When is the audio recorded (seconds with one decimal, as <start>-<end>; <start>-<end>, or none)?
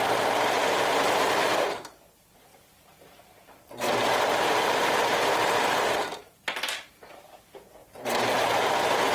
0.0-0.6; 1.4-2.5; 7.0-7.8; 8.7-9.1